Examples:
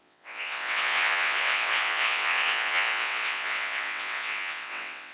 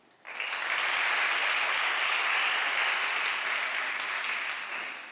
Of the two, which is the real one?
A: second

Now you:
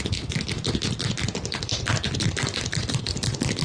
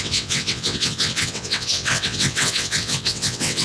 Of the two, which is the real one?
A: first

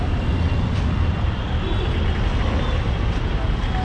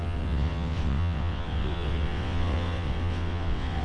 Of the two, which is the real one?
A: first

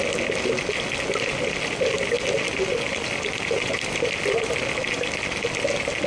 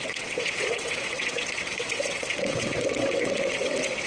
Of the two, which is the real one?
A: first